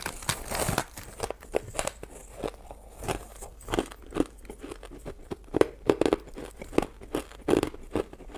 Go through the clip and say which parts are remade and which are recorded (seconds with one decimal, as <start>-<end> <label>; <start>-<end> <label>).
0.0-8.4 recorded